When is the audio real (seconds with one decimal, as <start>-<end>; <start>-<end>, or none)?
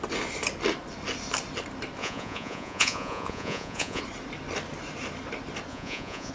0.0-2.0; 4.0-5.7